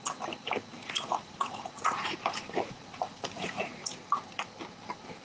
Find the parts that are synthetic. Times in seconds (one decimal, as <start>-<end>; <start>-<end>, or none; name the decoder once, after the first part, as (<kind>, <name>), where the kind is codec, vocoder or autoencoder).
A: 0.8-3.9 (vocoder, Vocos)

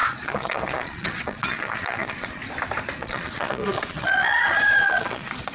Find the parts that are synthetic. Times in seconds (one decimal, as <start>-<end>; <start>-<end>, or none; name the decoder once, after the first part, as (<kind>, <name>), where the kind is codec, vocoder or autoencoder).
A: 0.0-2.4 (vocoder, Vocos); 3.0-5.5

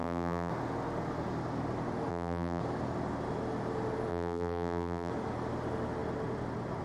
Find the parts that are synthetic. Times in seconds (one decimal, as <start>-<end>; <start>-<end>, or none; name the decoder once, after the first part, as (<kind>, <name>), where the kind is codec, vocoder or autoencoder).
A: 0.0-0.5 (vocoder, BigVGAN v2); 2.1-2.6; 4.1-5.1